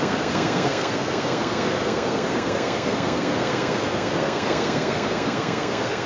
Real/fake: fake